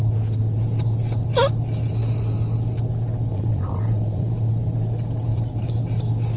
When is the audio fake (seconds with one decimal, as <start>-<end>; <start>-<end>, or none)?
3.3-4.3